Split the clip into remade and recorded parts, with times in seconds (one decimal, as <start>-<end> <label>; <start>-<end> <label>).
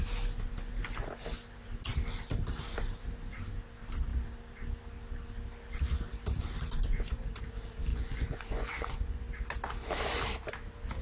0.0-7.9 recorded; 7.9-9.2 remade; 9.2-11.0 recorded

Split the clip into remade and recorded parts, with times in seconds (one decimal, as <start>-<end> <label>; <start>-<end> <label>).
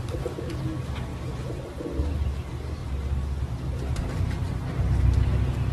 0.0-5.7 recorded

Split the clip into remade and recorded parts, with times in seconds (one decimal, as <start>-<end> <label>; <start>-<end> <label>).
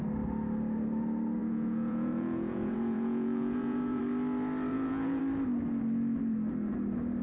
0.0-1.4 recorded; 1.4-4.0 remade; 4.0-4.7 recorded; 4.7-5.2 remade; 5.2-7.2 recorded